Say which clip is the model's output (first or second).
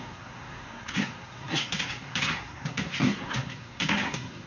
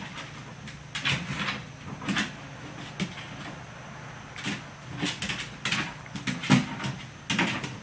first